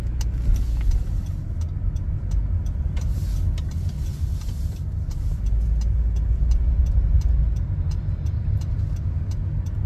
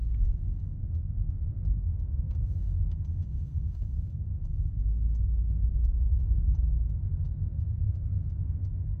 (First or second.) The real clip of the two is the first